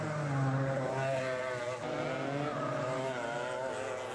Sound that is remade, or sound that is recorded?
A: recorded